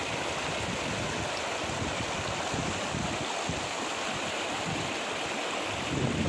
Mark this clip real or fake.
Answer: real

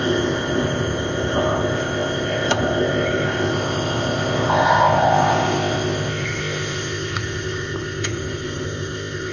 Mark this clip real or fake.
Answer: fake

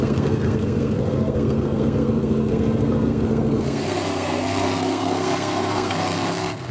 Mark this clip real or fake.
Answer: fake